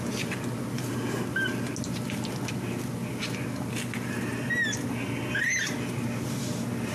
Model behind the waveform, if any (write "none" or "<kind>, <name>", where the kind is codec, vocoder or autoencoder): none